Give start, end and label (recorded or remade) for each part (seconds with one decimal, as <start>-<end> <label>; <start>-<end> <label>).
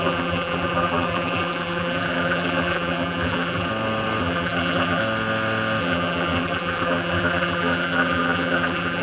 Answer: 0.0-3.7 remade; 3.7-4.2 recorded; 4.2-5.0 remade; 5.0-5.8 recorded; 5.8-9.0 remade